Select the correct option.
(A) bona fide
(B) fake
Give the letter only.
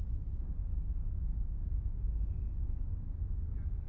B